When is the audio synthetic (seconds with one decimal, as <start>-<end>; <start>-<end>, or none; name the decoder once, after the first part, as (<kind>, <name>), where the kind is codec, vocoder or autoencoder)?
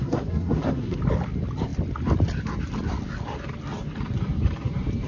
0.0-1.0 (codec, SNAC)